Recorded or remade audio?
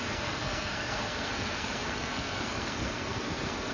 remade